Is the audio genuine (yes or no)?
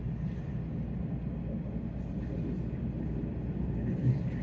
yes